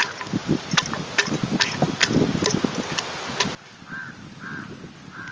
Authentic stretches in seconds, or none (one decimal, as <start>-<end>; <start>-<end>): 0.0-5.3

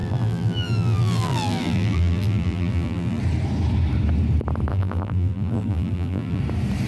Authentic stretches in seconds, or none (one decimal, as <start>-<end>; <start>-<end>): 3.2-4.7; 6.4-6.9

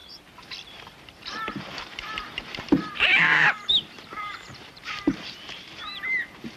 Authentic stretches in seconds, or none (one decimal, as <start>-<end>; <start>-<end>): none